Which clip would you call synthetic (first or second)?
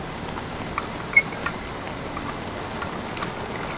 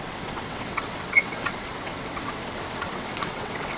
second